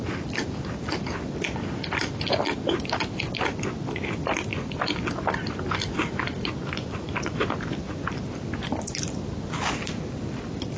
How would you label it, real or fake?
fake